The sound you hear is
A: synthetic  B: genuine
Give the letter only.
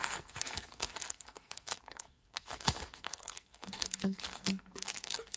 A